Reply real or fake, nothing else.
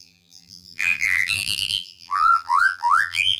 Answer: fake